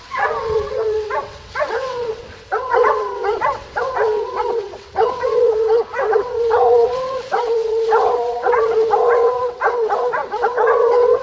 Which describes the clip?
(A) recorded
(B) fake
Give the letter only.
B